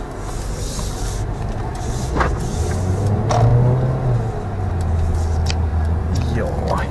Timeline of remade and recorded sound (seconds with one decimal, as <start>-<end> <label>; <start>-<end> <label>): 0.0-1.7 recorded; 1.7-2.5 remade; 2.5-5.7 recorded; 5.7-6.2 remade; 6.2-6.9 recorded

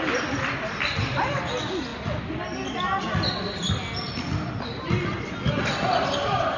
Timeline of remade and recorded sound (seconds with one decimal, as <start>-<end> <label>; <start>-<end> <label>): 0.0-6.6 recorded

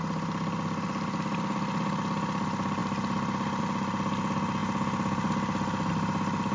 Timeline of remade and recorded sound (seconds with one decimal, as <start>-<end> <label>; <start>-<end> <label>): 0.0-6.5 recorded

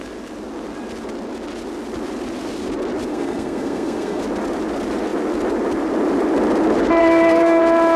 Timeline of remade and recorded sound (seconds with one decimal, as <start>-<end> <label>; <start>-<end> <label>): 0.0-3.1 recorded; 3.1-4.2 remade; 4.2-7.0 recorded; 7.0-7.6 remade; 7.6-8.0 recorded

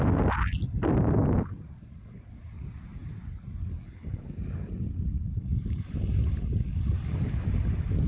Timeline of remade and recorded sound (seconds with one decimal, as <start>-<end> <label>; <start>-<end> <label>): 0.0-8.1 recorded